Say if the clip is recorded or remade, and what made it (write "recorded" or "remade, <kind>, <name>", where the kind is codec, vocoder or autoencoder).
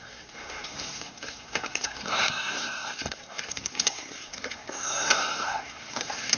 remade, codec, SNAC